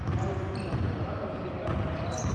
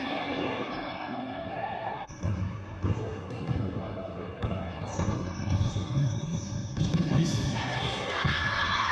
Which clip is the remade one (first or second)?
second